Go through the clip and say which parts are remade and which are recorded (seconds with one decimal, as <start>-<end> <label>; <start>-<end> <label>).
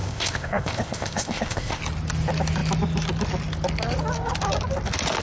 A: 0.0-1.8 remade; 1.8-5.2 recorded